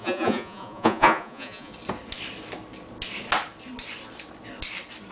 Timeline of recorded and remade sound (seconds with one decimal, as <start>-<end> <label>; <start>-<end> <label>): 0.0-1.7 remade; 1.7-5.1 recorded

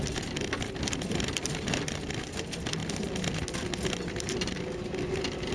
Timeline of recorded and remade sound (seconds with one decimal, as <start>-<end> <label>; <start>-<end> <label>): 0.0-5.5 recorded

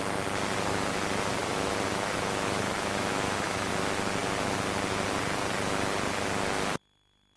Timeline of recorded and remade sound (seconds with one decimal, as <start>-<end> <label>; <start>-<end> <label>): 0.0-1.4 recorded; 1.4-3.7 remade; 3.7-7.4 recorded

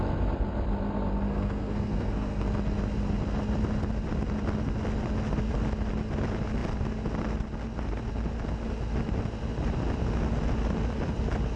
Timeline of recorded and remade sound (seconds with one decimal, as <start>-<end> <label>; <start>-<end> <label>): 0.0-1.3 recorded; 1.3-2.4 remade; 2.4-11.6 recorded

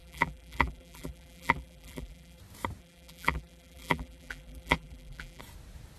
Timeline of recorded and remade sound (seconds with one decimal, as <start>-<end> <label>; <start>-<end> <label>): 0.0-2.4 remade; 2.4-2.8 recorded; 2.8-5.4 remade; 5.4-6.0 recorded

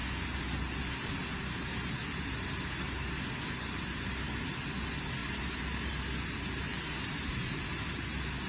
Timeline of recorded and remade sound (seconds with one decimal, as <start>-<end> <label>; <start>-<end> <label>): 0.0-5.2 recorded; 5.2-6.0 remade; 6.0-6.7 recorded; 6.7-7.6 remade; 7.6-8.5 recorded

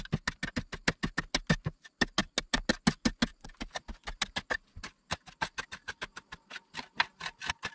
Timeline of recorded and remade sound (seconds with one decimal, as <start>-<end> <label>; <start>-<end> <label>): 0.0-7.7 recorded